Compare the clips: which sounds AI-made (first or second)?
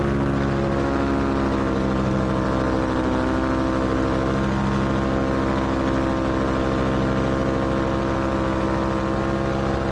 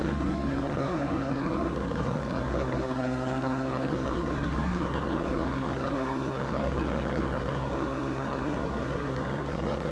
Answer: second